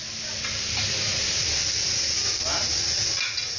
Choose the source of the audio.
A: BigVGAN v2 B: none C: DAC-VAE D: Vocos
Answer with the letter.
B